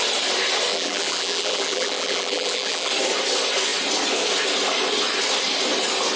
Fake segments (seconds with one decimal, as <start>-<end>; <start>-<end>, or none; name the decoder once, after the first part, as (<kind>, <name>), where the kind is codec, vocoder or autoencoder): 0.7-2.9 (vocoder, BigVGAN v2)